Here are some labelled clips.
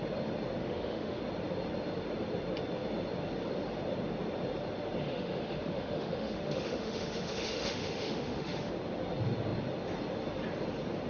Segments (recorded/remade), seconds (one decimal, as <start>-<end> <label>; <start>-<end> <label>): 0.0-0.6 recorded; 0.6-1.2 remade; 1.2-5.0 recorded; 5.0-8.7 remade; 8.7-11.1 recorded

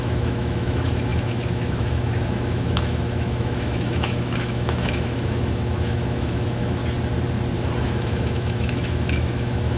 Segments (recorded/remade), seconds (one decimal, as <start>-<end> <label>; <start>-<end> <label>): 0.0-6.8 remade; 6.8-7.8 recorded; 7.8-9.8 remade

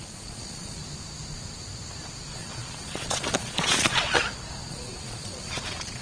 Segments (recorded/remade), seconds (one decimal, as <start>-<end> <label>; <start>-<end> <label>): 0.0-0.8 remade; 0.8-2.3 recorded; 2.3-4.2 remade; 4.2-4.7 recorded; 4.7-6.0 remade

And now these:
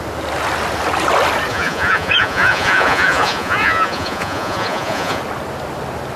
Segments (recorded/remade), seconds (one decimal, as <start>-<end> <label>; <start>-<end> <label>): 0.0-1.5 recorded; 1.5-5.2 remade; 5.2-6.2 recorded

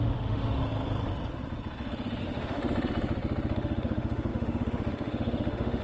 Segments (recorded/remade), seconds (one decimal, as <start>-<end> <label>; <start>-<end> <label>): 0.0-0.6 remade; 0.6-2.2 recorded; 2.2-2.6 remade; 2.6-3.5 recorded; 3.5-5.8 remade

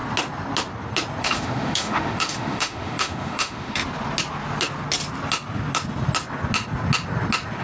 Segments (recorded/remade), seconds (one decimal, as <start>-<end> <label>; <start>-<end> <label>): 0.0-1.2 recorded; 1.2-3.8 remade; 3.8-7.6 recorded